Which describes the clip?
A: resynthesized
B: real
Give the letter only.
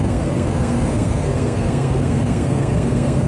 A